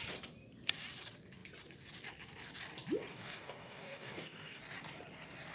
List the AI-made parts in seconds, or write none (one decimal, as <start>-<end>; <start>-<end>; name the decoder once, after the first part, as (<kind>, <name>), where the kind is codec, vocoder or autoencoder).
3.1-4.6 (codec, DAC)